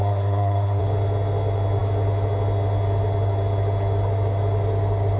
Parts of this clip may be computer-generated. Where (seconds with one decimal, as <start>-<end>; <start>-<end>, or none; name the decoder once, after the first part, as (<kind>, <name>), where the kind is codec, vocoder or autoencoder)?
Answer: 0.0-0.8 (codec, SNAC)